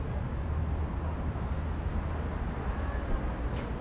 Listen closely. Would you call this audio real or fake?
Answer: real